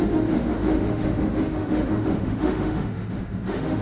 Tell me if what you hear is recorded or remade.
remade